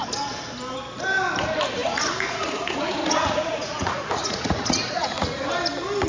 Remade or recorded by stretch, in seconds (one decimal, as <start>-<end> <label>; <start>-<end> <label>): 0.0-1.8 recorded; 1.8-5.5 remade; 5.5-6.1 recorded